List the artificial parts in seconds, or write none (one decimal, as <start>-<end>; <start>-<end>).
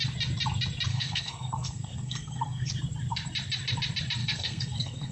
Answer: 0.9-2.7; 4.2-5.1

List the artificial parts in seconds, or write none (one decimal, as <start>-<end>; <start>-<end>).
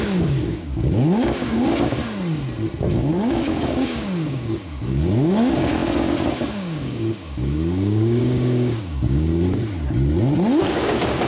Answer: 0.0-2.0; 3.0-9.3; 10.6-11.3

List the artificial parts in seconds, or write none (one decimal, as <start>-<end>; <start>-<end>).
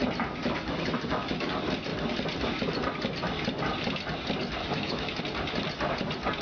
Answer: 0.4-1.5; 4.6-5.2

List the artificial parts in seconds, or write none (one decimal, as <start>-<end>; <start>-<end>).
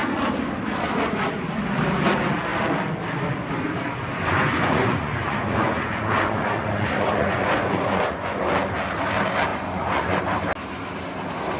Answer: 4.3-8.4; 9.5-10.2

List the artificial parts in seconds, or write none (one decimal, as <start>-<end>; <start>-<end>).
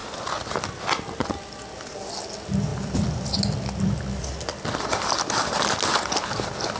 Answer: 0.0-0.8; 2.7-5.7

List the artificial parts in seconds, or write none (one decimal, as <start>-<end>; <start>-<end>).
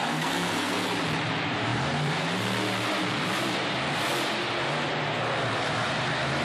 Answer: 0.0-0.9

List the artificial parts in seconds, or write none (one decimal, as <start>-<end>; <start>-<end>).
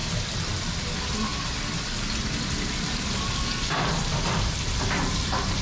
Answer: 4.0-5.6